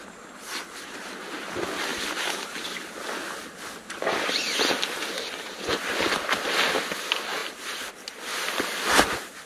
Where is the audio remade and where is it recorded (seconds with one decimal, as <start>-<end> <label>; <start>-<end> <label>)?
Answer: 0.0-7.4 recorded; 7.4-7.9 remade; 7.9-9.5 recorded